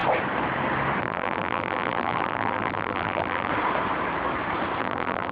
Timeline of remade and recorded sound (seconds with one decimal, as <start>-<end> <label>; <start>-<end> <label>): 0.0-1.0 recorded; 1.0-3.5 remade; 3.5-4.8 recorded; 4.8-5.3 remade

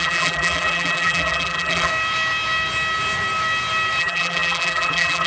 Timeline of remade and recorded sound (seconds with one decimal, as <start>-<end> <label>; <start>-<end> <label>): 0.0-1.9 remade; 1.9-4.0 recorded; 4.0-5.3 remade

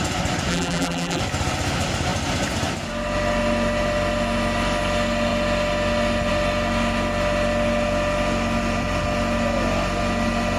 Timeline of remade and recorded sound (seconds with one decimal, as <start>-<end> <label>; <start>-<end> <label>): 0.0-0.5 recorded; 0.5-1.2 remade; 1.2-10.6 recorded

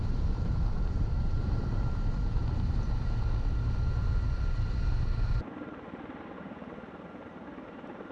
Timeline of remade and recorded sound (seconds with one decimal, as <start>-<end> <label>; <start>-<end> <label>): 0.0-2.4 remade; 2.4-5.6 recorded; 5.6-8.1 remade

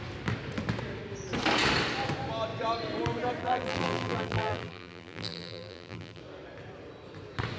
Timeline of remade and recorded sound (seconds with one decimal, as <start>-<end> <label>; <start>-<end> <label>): 0.0-3.4 recorded; 3.4-6.2 remade; 6.2-7.6 recorded

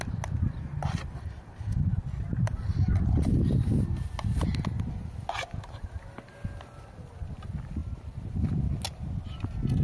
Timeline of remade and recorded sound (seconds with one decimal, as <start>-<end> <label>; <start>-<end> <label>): 0.0-1.9 recorded; 1.9-3.2 remade; 3.2-7.8 recorded; 7.8-8.4 remade; 8.4-9.8 recorded

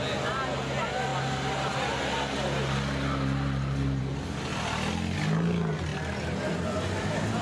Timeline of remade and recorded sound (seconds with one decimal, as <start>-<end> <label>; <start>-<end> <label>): 0.0-7.4 recorded

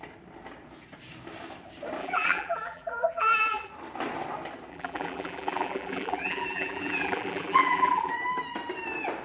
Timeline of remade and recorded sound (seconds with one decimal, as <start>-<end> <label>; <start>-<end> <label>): 0.0-2.0 recorded; 2.0-3.7 remade; 3.7-4.7 recorded; 4.7-8.1 remade; 8.1-9.2 recorded